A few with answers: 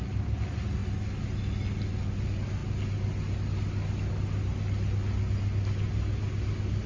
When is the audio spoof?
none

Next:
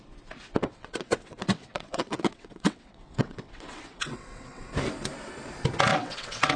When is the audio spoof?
0.6-4.6; 5.9-6.6

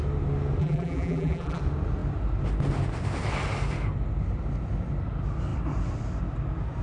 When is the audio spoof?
0.6-1.6